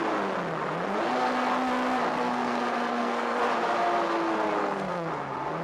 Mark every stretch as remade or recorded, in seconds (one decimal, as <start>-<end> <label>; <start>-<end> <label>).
0.0-2.1 recorded; 2.1-3.4 remade; 3.4-4.6 recorded; 4.6-5.1 remade; 5.1-5.6 recorded